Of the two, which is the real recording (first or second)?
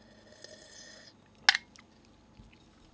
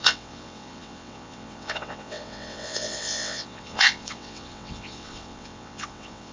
first